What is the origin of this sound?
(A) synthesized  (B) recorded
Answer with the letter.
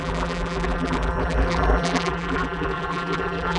A